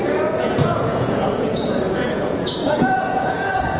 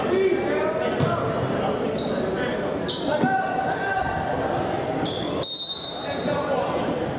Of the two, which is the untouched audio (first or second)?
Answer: second